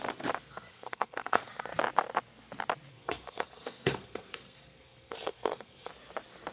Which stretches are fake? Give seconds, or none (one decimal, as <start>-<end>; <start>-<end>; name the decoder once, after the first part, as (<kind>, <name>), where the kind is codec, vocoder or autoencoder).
0.7-1.5 (codec, SNAC); 2.9-5.9